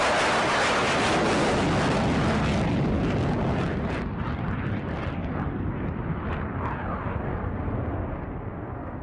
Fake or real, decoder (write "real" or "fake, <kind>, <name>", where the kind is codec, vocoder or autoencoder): real